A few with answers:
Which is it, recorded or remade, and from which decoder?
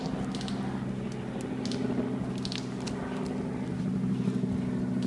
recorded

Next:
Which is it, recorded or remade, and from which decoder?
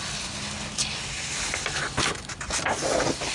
recorded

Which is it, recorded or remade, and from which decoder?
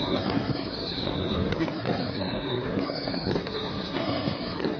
remade, codec, SNAC